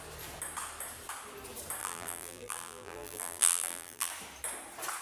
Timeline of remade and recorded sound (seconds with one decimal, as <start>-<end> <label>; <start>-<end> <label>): 0.0-1.8 recorded; 1.8-4.1 remade; 4.1-5.0 recorded